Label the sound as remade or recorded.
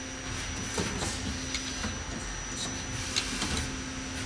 recorded